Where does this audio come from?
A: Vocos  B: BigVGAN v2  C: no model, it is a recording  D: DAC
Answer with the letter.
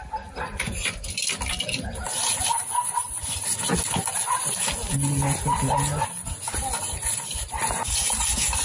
C